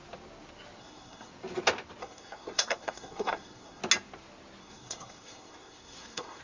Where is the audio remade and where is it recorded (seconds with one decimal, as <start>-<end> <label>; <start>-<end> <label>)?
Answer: 0.0-0.8 recorded; 0.8-1.3 remade; 1.3-2.0 recorded; 2.0-3.8 remade; 3.8-4.6 recorded; 4.6-6.4 remade

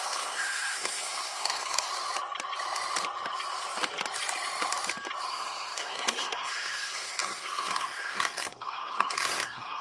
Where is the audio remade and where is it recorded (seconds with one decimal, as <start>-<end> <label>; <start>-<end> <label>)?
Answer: 0.0-1.9 remade; 1.9-5.3 recorded; 5.3-9.8 remade

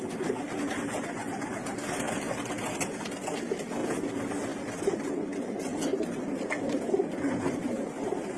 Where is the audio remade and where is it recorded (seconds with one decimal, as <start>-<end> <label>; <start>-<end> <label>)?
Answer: 0.0-8.4 recorded

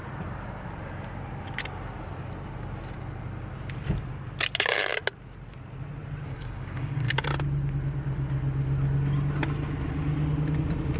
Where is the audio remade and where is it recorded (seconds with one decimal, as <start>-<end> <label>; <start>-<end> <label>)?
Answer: 0.0-6.3 recorded; 6.3-7.1 remade; 7.1-11.0 recorded

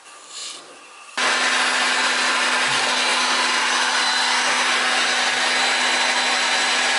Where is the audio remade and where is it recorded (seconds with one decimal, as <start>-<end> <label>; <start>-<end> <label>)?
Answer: 0.0-7.0 recorded

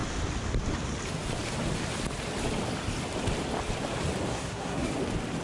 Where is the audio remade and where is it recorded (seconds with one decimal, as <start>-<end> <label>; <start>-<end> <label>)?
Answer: 0.0-4.3 recorded; 4.3-4.9 remade; 4.9-5.4 recorded